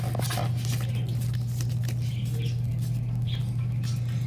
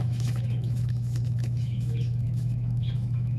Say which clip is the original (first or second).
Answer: first